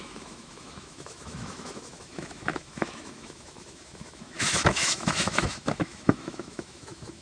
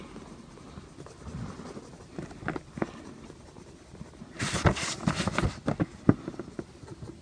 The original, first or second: second